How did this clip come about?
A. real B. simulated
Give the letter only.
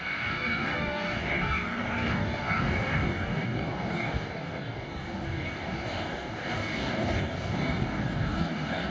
B